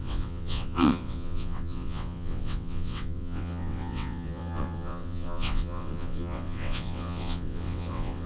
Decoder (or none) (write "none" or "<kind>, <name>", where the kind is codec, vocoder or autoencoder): vocoder, WaveNeXt